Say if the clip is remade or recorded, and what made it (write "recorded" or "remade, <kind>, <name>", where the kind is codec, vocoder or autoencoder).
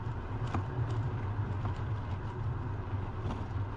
recorded